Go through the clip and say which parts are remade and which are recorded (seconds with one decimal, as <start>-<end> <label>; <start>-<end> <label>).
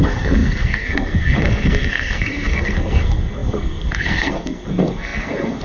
0.0-5.6 remade